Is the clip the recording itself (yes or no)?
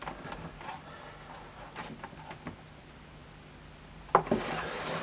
yes